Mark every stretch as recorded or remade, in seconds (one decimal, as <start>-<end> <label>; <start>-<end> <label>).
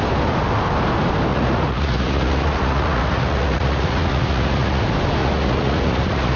0.0-1.3 recorded; 1.3-4.8 remade; 4.8-5.2 recorded; 5.2-6.4 remade